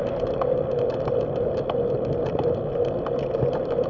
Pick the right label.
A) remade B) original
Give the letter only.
B